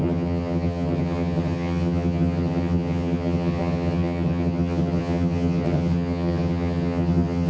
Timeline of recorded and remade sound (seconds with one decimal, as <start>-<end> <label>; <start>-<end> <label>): 0.0-7.5 remade